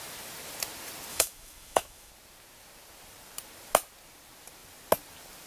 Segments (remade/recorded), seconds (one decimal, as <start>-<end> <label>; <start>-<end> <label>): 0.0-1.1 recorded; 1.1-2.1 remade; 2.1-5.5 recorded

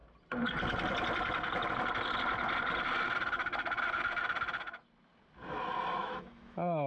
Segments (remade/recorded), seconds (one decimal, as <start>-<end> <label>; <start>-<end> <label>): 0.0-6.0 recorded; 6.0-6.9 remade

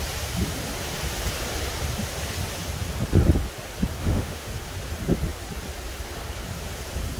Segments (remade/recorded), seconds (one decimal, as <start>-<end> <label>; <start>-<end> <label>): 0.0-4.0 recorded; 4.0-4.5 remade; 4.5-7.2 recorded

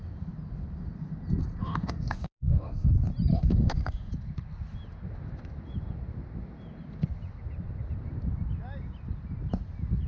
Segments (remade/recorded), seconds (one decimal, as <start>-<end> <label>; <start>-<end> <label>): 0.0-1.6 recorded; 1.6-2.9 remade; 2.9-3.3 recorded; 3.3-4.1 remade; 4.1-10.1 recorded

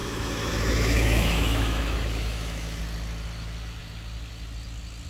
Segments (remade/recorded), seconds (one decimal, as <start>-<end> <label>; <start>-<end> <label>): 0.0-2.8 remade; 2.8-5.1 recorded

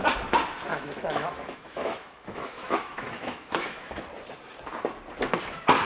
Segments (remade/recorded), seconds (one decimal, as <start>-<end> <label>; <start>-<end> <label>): 0.0-0.7 recorded; 0.7-4.0 remade; 4.0-5.8 recorded